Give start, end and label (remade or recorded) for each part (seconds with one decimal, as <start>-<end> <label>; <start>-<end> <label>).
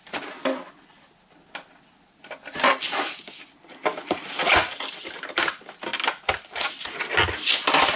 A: 0.0-8.0 recorded